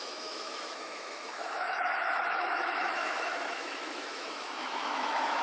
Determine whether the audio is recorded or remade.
remade